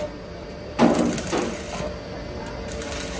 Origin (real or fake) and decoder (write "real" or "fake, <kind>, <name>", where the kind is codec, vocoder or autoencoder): real